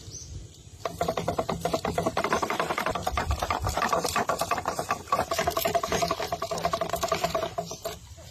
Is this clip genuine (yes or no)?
no